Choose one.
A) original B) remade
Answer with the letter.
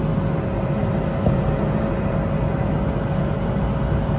A